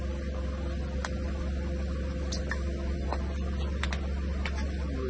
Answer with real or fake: real